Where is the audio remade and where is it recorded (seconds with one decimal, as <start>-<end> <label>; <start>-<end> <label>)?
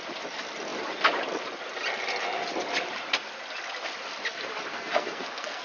0.0-4.7 recorded; 4.7-5.6 remade